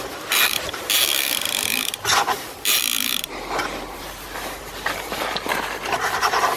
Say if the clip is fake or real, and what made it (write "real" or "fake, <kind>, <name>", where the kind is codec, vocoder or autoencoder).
fake, vocoder, BigVGAN v2